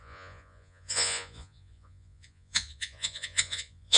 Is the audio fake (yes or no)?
yes